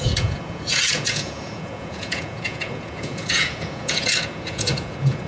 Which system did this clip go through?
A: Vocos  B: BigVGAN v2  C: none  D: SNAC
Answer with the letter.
A